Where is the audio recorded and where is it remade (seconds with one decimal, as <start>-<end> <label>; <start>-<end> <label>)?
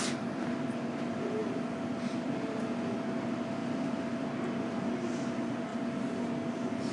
0.0-6.9 recorded